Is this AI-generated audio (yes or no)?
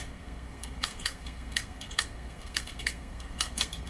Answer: yes